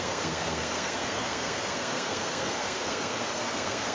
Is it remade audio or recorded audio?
remade